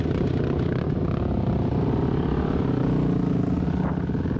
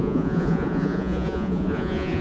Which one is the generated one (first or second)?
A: second